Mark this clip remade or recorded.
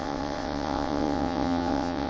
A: remade